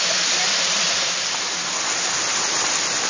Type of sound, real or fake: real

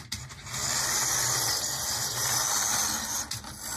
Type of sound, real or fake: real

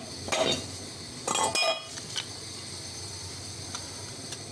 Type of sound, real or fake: real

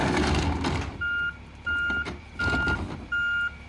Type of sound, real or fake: real